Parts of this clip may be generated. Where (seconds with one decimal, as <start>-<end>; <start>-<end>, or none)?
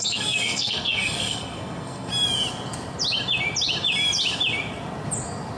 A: 0.0-2.1